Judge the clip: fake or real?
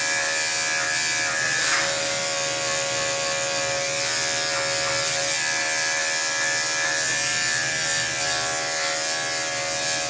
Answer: real